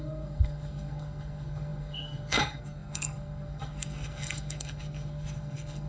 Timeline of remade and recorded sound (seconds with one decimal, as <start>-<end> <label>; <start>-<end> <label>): 0.0-5.9 remade